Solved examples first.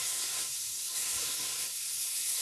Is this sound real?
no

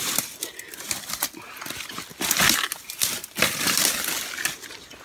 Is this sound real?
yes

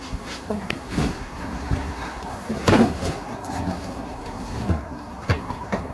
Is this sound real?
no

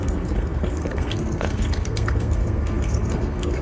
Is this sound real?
no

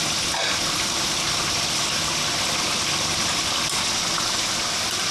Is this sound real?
yes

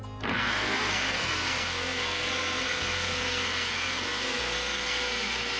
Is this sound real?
no